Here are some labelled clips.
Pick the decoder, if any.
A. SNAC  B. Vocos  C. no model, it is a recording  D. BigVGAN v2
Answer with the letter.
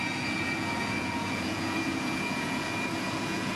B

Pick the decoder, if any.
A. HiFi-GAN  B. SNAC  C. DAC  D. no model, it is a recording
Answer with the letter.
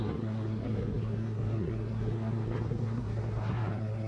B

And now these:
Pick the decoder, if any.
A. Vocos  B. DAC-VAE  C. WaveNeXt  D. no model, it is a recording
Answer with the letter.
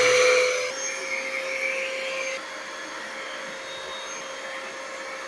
D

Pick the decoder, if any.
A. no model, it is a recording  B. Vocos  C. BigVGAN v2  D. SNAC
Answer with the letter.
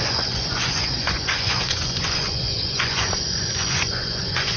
B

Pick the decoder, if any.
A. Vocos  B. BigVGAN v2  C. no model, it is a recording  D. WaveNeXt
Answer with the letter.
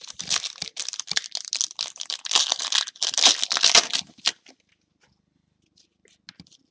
C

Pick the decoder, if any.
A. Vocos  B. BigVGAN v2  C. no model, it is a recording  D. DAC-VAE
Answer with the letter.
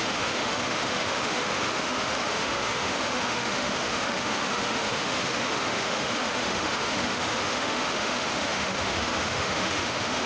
D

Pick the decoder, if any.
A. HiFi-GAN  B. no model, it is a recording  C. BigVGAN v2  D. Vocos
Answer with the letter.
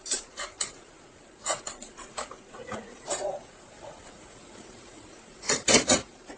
D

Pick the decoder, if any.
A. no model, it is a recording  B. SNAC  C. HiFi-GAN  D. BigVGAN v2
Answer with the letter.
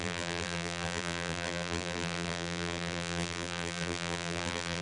D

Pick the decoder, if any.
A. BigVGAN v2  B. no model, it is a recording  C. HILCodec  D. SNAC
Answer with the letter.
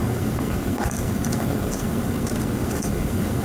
D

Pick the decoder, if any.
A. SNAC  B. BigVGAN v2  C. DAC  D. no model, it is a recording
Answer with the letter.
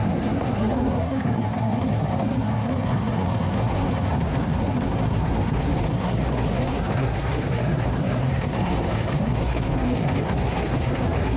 A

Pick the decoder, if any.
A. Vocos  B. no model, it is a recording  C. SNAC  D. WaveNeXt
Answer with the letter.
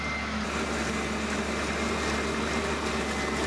B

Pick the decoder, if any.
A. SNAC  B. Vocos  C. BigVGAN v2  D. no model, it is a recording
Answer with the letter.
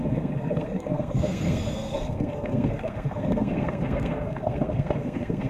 A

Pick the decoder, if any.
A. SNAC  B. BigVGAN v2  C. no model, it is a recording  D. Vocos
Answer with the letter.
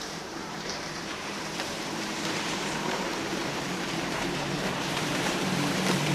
B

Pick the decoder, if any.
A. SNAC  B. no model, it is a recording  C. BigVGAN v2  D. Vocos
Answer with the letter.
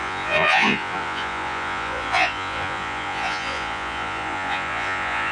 D